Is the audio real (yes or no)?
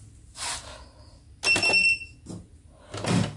yes